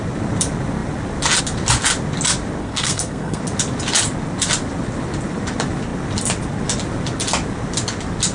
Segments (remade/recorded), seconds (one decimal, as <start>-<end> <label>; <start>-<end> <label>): 0.0-2.6 recorded; 2.6-3.4 remade; 3.4-8.3 recorded